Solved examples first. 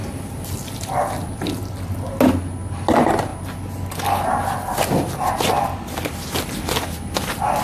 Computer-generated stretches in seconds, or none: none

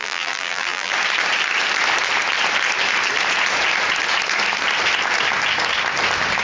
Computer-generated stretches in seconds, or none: 0.0-0.9 (vocoder, BigVGAN v2)

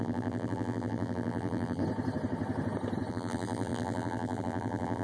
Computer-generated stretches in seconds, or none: 0.0-1.8 (vocoder, BigVGAN v2); 3.1-5.0

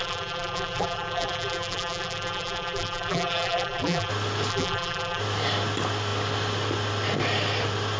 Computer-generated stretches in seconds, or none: 0.0-4.1 (vocoder, BigVGAN v2); 4.5-5.2

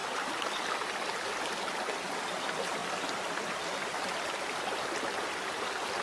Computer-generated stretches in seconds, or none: none

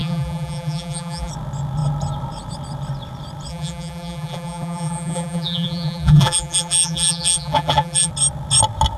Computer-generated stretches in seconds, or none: 0.0-1.3 (vocoder, BigVGAN v2); 3.5-8.1

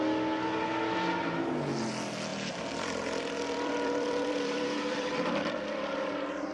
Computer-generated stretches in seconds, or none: 2.3-5.5 (vocoder, BigVGAN v2)